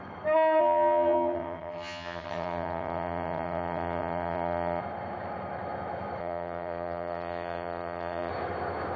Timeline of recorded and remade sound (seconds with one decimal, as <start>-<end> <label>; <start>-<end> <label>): 0.0-0.6 recorded; 0.6-4.8 remade; 4.8-6.2 recorded; 6.2-8.3 remade; 8.3-9.0 recorded